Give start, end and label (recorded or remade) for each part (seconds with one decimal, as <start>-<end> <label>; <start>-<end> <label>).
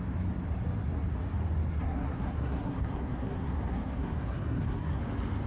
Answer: 0.0-1.7 recorded; 1.7-5.0 remade; 5.0-5.5 recorded